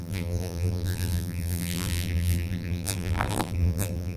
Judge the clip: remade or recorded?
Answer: remade